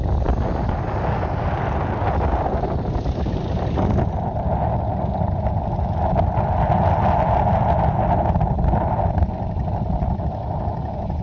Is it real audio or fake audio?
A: real